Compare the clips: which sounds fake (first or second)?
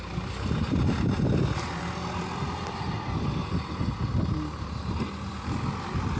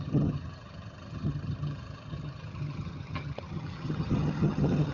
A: second